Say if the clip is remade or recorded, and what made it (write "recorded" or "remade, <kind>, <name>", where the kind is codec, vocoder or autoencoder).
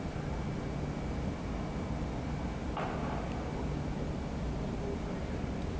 recorded